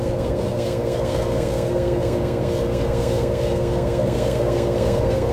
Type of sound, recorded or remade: remade